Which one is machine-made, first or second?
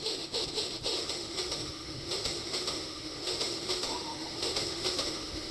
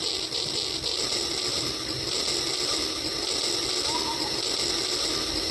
first